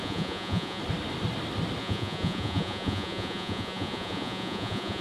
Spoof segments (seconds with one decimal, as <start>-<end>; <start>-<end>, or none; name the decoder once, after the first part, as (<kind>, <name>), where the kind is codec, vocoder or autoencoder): 0.0-0.8 (vocoder, Vocos); 1.8-5.0